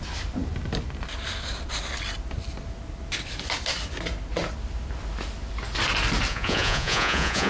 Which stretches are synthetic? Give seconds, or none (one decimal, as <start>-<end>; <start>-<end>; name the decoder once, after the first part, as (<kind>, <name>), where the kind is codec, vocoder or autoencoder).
6.3-7.5 (vocoder, Vocos)